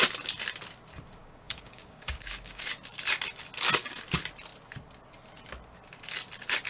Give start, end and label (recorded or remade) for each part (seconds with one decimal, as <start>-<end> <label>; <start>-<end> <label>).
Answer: 0.0-1.2 recorded; 1.2-2.6 remade; 2.6-6.7 recorded